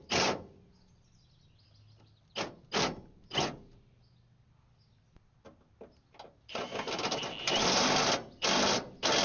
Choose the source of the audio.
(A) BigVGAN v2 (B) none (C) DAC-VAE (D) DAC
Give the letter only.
B